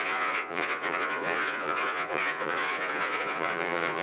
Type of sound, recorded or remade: remade